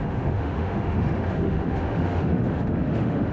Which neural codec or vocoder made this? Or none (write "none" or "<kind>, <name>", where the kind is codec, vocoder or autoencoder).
autoencoder, DAC-VAE